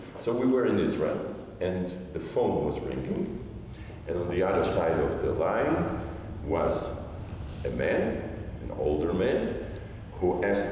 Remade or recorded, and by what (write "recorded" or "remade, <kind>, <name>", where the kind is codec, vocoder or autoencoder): recorded